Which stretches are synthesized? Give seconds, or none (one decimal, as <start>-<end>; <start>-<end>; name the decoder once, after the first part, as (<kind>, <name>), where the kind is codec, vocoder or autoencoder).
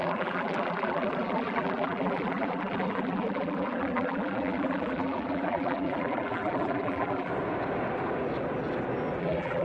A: 0.0-7.3 (vocoder, BigVGAN v2); 9.2-9.6